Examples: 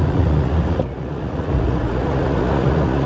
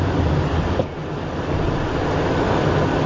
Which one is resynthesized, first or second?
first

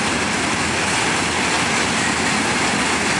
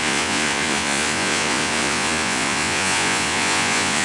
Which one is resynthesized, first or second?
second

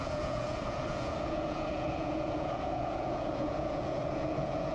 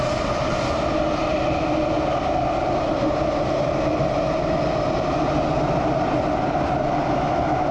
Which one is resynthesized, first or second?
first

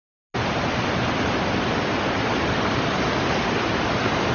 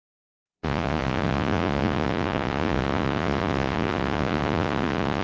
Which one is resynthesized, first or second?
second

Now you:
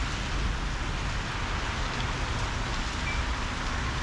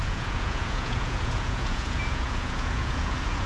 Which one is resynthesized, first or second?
second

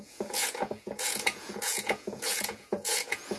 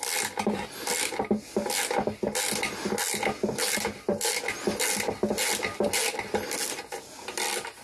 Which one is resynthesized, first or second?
first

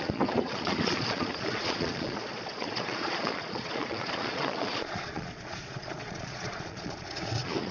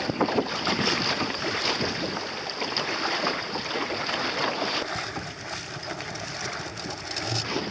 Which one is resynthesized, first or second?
first